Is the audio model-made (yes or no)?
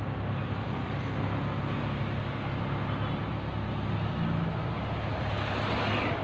no